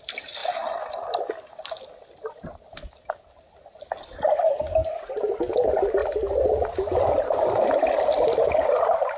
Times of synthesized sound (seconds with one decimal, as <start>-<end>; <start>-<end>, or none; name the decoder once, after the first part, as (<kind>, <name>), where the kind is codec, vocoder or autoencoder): 0.0-4.8 (vocoder, BigVGAN v2); 5.3-9.2